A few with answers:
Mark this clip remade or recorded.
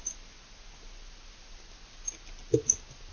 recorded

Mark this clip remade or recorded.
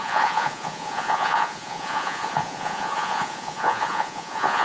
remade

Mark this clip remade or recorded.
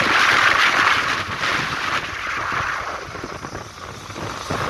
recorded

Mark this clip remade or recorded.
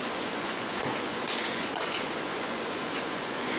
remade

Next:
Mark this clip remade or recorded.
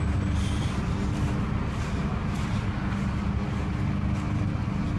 recorded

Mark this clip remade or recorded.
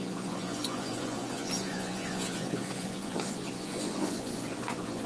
remade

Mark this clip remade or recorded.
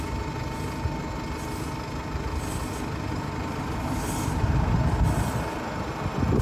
recorded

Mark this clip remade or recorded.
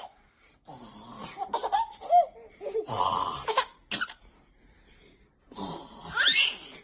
recorded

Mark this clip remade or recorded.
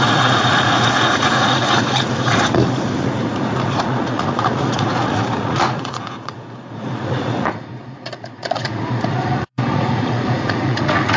remade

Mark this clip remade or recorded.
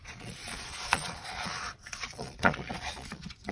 remade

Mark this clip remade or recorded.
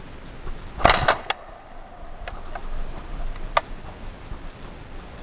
recorded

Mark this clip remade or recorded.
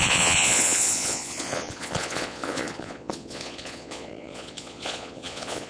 remade